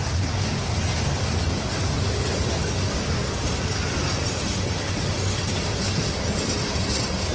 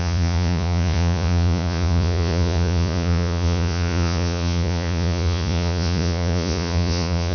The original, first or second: first